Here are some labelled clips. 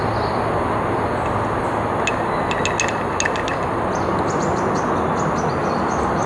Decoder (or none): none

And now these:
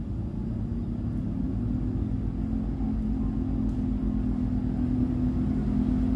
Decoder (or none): none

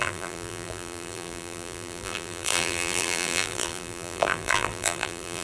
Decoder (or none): vocoder, BigVGAN v2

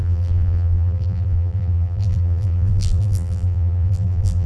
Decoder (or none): vocoder, BigVGAN v2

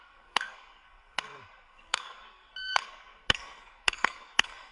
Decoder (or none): codec, SNAC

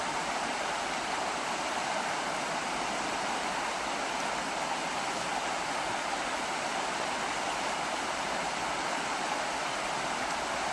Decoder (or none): none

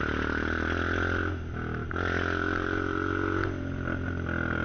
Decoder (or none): none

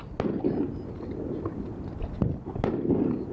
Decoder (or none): none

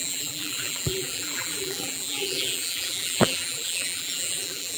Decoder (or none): vocoder, BigVGAN v2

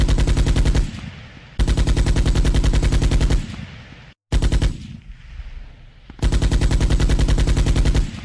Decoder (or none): none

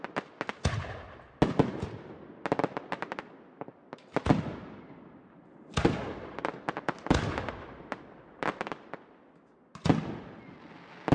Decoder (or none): none